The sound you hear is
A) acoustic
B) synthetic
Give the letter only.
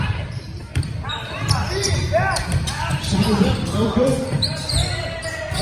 B